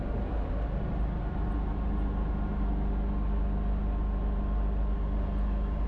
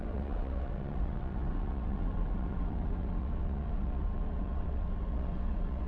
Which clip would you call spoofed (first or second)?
second